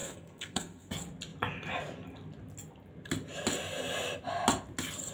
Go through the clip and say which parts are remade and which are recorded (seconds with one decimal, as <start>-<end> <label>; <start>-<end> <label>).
0.0-0.9 remade; 0.9-5.1 recorded